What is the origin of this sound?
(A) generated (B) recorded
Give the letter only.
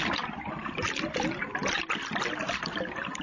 B